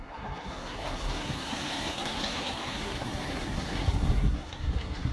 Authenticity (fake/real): fake